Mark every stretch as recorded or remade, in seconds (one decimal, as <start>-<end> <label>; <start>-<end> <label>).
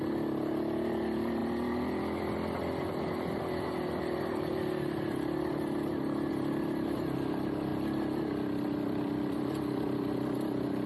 0.0-10.9 recorded